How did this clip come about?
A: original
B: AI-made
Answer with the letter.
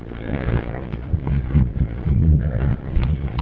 B